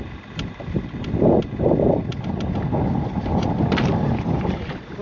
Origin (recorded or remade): recorded